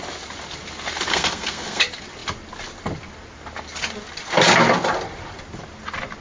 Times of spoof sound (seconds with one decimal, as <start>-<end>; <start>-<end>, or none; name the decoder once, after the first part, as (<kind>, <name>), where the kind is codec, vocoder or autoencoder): 1.1-1.8 (codec, SNAC)